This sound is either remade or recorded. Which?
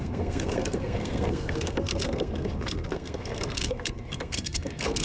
remade